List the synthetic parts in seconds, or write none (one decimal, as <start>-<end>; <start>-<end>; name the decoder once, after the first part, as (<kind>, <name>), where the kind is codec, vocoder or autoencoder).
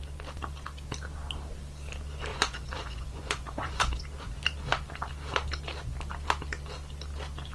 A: 2.3-4.0 (vocoder, Vocos)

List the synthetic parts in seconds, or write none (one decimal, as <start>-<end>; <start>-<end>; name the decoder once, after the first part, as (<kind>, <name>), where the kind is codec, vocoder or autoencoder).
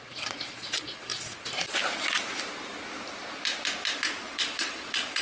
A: 0.0-1.1 (vocoder, Vocos); 4.2-5.2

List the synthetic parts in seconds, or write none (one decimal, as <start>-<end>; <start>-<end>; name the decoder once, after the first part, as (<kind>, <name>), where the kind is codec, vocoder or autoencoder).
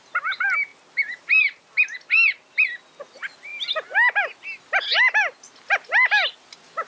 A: none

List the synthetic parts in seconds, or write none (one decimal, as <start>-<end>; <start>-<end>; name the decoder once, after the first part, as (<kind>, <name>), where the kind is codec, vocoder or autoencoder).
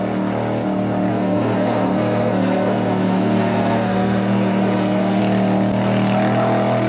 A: 1.1-5.2 (codec, SNAC)